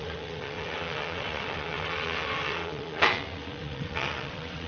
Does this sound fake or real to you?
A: fake